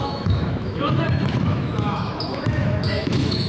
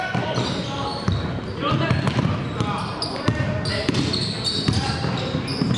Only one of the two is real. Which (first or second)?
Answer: second